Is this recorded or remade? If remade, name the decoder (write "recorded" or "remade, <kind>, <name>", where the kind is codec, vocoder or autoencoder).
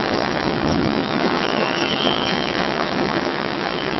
remade, vocoder, WaveNeXt